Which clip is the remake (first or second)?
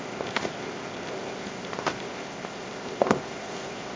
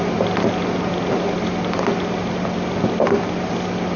first